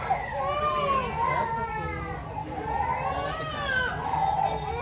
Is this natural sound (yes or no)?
yes